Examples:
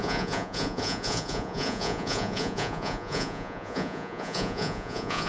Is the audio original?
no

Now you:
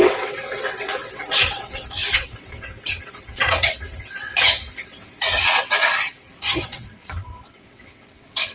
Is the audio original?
no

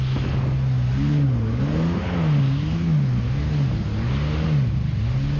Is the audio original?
yes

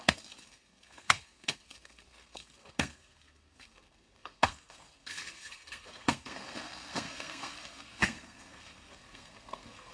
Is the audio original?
no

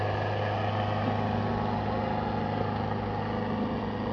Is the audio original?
yes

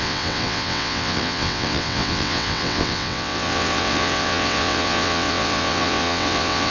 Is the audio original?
no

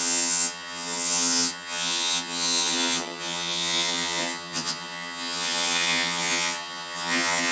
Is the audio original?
no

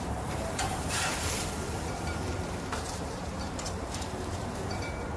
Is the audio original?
no